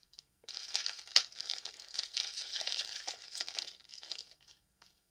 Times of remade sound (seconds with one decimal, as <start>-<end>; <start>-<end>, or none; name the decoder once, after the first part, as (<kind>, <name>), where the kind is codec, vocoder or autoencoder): 0.0-5.1 (codec, SNAC)